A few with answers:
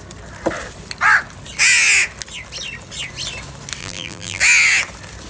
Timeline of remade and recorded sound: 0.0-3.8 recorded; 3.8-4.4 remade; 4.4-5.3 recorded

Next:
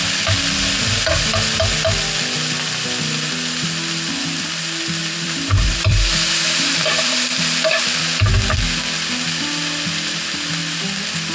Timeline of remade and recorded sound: 0.0-5.0 recorded; 5.0-8.0 remade; 8.0-11.3 recorded

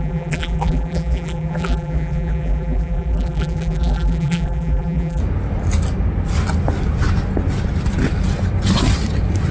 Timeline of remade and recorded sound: 0.0-5.2 remade; 5.2-9.5 recorded

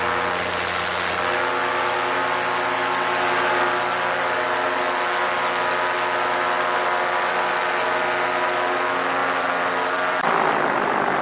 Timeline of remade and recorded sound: 0.0-9.2 recorded; 9.2-10.4 remade; 10.4-11.2 recorded

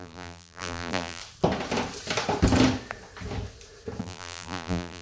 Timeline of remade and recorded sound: 0.0-1.2 remade; 1.2-4.0 recorded; 4.0-5.0 remade